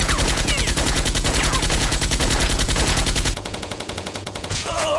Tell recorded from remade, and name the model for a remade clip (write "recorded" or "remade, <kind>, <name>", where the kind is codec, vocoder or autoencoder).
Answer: remade, vocoder, Vocos